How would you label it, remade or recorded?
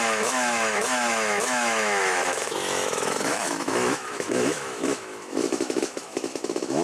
remade